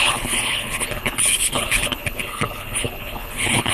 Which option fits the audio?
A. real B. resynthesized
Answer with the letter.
B